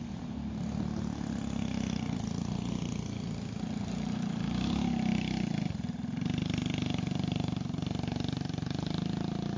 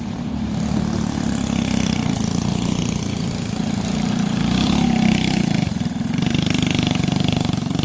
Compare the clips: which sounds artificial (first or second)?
second